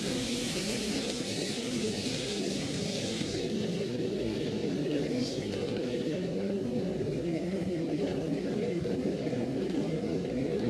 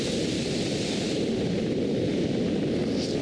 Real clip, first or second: second